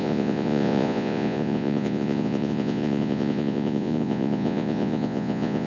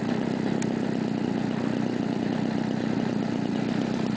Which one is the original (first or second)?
second